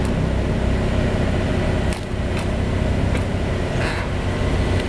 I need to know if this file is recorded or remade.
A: recorded